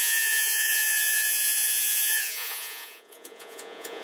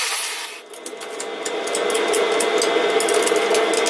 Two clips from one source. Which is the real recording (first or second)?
second